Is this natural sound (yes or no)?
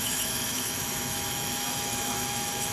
no